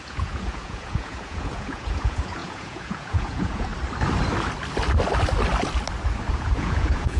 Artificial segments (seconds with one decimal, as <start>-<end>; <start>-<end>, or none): 0.0-3.7; 6.3-7.2